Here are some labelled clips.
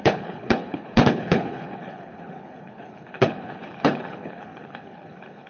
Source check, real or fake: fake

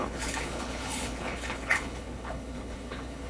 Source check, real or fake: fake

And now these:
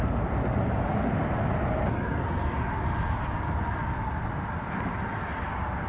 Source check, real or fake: real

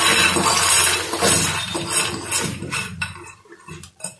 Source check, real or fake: real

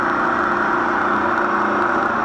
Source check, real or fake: real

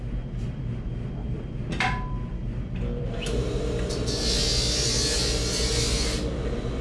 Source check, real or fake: real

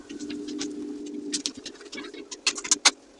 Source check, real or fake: real